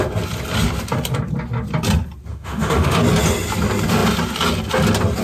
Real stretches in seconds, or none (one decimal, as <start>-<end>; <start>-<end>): 0.0-2.3; 3.0-5.2